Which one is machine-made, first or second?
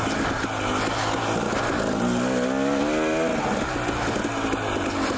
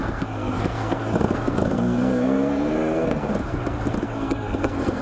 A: second